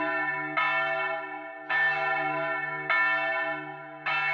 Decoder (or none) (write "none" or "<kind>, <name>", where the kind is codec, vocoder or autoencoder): none